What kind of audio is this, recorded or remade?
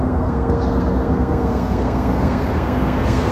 remade